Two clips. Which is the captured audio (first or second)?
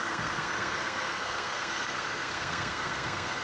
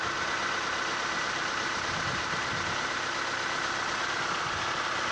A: second